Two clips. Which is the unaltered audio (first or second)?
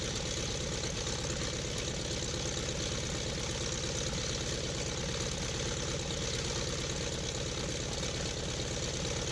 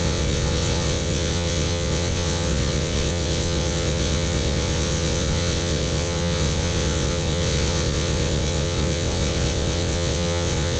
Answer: first